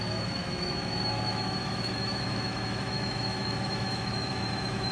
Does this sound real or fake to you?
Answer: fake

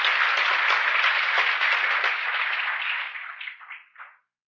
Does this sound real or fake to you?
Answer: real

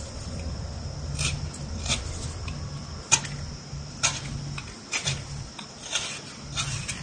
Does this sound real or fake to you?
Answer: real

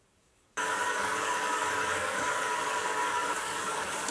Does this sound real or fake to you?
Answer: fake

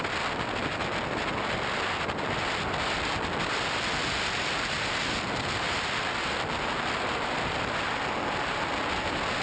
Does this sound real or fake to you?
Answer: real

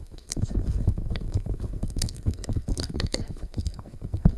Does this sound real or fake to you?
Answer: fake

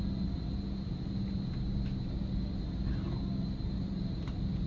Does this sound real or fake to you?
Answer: real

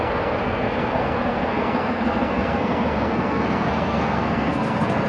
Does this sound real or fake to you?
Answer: fake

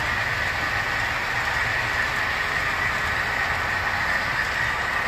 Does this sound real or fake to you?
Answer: real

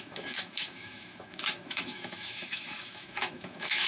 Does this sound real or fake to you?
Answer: fake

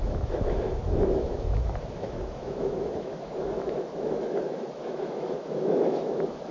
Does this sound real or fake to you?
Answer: fake